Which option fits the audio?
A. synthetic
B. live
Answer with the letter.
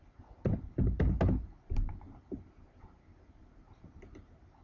B